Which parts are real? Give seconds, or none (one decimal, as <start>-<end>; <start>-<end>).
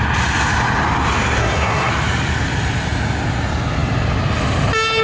0.0-1.4; 1.9-5.0